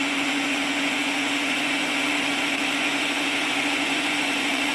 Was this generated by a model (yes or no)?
yes